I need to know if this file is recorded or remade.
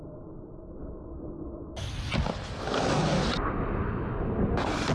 recorded